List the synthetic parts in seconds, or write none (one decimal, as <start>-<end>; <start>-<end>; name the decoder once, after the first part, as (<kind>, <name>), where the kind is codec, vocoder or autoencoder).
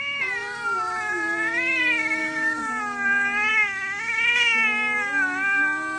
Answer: 2.2-2.8 (autoencoder, DAC-VAE); 3.5-4.0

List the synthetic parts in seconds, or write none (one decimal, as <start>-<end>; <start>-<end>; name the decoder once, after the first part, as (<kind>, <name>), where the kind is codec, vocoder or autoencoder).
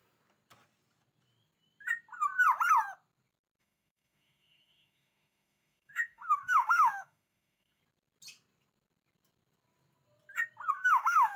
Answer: 3.6-7.8 (autoencoder, DAC-VAE); 10.7-11.4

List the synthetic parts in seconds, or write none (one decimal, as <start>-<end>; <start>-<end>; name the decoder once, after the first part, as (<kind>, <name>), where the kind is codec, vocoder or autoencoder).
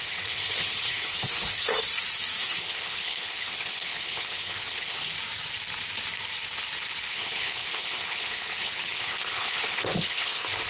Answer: 0.0-1.7 (codec, HILCodec); 2.4-5.1; 7.1-10.7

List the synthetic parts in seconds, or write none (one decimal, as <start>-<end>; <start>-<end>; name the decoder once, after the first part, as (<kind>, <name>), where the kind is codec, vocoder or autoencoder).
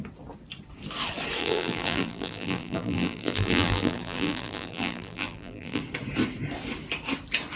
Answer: 1.4-5.8 (vocoder, BigVGAN v2)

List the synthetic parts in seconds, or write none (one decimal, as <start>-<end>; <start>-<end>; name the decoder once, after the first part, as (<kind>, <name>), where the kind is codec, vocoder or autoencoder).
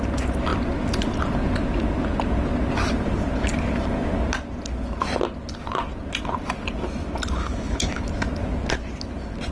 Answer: 7.4-8.0 (codec, HILCodec)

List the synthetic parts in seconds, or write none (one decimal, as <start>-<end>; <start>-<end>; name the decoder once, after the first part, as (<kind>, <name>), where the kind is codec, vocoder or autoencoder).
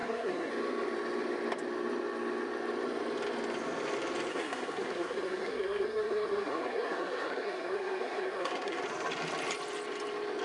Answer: 0.0-0.5 (codec, SNAC); 4.3-8.8